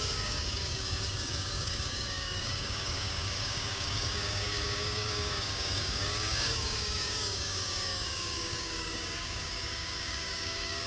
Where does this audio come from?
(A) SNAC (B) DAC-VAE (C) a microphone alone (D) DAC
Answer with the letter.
D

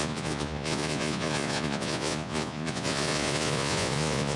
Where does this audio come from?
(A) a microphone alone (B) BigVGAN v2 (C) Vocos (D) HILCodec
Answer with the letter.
C